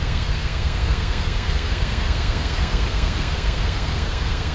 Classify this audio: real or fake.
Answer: fake